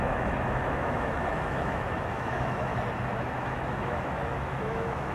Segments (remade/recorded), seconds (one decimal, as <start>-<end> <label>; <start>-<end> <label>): 0.0-2.7 remade; 2.7-3.4 recorded; 3.4-5.1 remade